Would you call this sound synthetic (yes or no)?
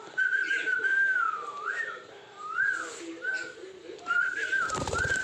yes